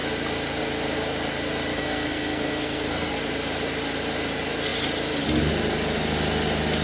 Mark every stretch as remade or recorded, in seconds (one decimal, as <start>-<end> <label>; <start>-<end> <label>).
0.0-1.7 recorded; 1.7-3.1 remade; 3.1-6.8 recorded